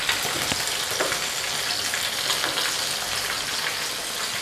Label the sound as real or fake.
real